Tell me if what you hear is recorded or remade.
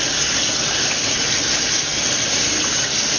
recorded